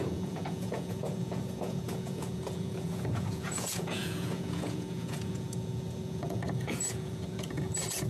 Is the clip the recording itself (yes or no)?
no